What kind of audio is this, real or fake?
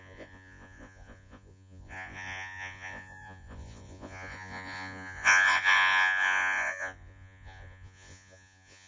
fake